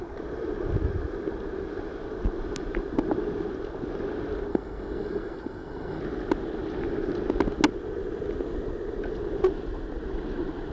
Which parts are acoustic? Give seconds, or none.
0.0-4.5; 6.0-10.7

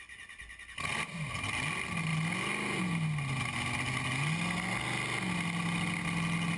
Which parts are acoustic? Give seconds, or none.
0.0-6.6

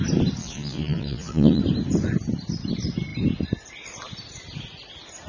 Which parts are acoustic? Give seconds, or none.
0.0-0.4; 1.6-5.3